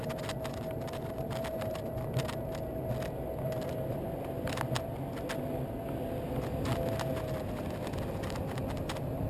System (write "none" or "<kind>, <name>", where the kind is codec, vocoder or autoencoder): none